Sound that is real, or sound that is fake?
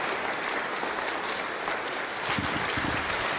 real